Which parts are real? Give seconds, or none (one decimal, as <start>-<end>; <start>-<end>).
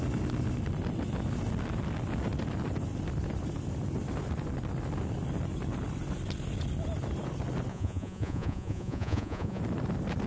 0.0-7.7; 9.6-10.3